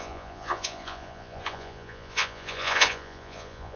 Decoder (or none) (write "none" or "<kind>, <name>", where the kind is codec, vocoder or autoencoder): vocoder, Vocos